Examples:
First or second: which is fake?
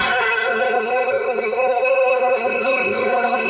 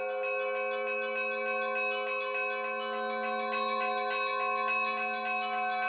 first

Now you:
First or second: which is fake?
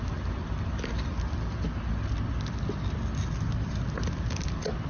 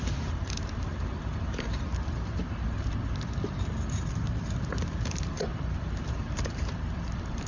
second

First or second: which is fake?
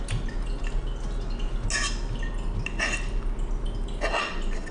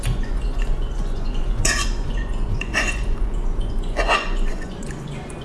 second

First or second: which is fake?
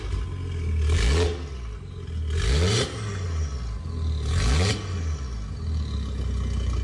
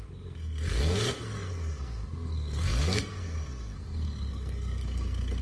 second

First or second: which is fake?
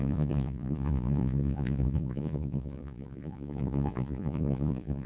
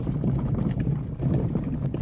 first